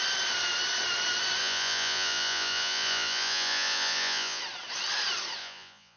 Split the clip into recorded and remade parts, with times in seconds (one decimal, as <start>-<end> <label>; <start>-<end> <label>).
0.0-1.4 recorded; 1.4-4.4 remade; 4.4-5.4 recorded; 5.4-6.0 remade